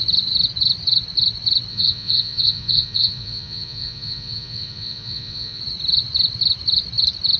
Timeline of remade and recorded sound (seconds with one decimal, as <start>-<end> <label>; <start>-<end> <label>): 0.0-1.7 recorded; 1.7-5.6 remade; 5.6-7.4 recorded